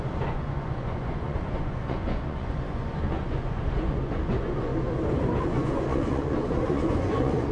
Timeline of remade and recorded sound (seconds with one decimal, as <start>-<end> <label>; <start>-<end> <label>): 0.0-4.7 remade; 4.7-5.4 recorded; 5.4-7.5 remade